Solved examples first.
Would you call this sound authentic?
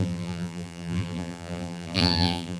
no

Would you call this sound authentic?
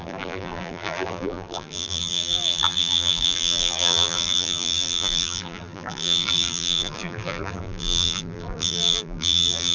no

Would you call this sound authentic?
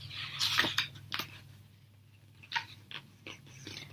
yes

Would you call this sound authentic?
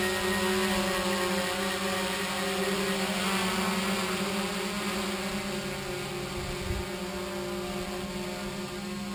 yes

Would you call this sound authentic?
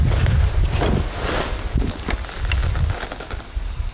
yes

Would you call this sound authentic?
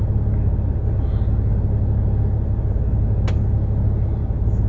yes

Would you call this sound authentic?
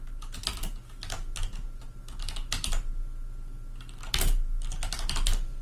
yes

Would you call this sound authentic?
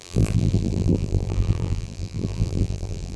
no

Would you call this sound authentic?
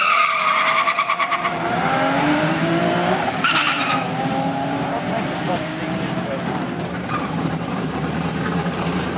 no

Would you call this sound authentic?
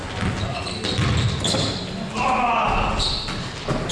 yes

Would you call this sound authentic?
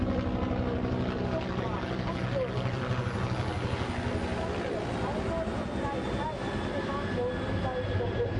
yes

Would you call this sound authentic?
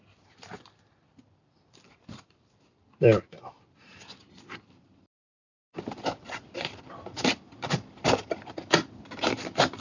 no